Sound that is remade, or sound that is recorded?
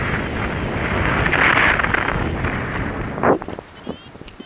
recorded